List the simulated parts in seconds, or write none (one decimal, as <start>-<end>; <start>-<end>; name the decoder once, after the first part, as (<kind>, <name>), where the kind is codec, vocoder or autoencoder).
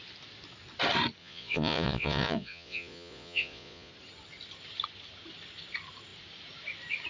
1.2-3.9 (vocoder, Vocos)